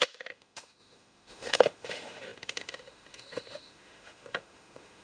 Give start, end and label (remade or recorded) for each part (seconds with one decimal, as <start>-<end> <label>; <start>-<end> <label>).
0.0-5.0 remade